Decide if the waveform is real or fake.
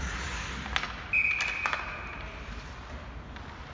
real